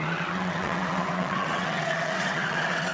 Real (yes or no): no